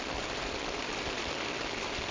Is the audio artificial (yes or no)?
no